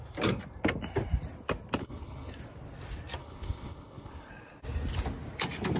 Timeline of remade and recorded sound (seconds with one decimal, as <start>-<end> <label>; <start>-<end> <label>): 0.0-1.8 recorded; 1.8-2.3 remade; 2.3-3.2 recorded; 3.2-4.3 remade; 4.3-5.8 recorded